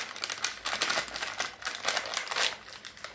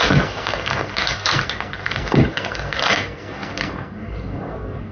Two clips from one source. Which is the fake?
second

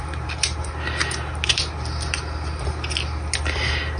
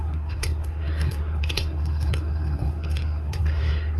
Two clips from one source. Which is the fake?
second